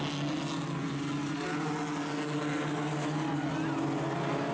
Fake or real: real